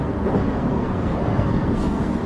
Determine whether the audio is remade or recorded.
remade